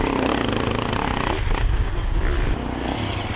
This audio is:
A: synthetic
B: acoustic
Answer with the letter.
B